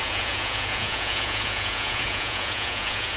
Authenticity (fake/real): fake